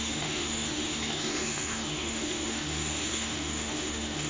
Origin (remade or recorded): remade